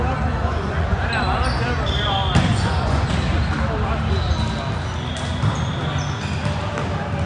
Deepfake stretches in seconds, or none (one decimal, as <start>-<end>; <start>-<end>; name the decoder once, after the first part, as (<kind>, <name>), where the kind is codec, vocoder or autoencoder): 0.4-1.0 (vocoder, Vocos); 2.5-3.1